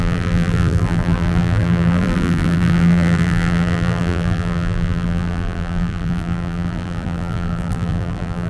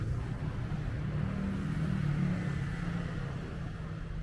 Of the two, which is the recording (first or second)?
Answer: second